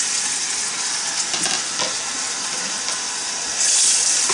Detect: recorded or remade recorded